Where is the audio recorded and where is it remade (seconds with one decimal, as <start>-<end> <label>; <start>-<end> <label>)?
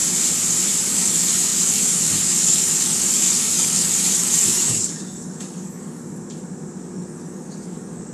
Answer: 0.0-0.8 recorded; 0.8-6.0 remade; 6.0-6.8 recorded; 6.8-8.1 remade